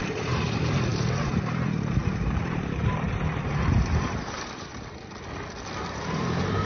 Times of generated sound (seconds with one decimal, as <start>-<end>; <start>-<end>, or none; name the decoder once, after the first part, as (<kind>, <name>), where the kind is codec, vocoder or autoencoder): 0.0-4.7 (vocoder, BigVGAN v2); 5.9-6.7